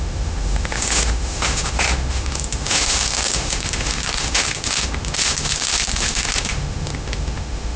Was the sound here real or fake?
fake